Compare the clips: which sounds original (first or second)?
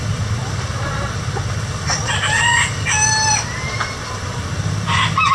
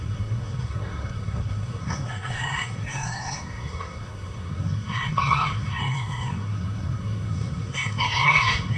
first